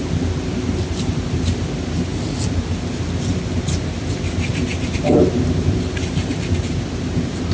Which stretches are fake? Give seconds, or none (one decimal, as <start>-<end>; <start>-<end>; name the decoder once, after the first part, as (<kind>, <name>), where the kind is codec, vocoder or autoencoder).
none